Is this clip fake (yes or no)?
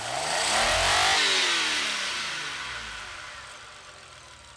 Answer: no